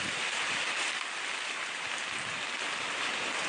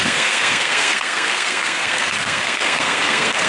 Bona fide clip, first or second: first